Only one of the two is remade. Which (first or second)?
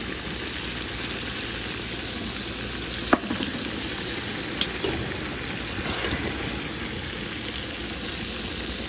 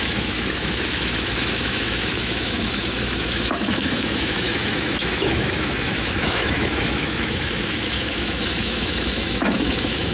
second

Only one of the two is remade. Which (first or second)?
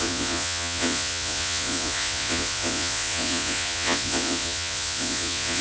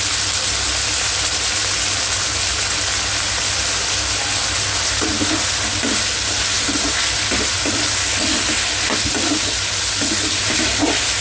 first